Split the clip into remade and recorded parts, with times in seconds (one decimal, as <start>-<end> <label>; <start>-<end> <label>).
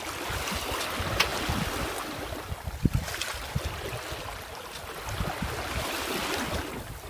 0.0-7.1 recorded